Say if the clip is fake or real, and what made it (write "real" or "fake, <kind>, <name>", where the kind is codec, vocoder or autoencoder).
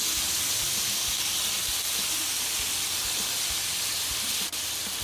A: real